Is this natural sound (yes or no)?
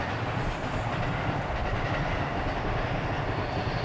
yes